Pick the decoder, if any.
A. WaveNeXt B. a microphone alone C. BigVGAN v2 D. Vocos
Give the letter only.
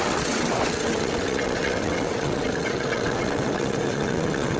A